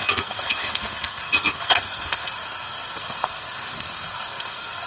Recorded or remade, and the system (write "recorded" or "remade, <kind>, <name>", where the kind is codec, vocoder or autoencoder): remade, codec, SNAC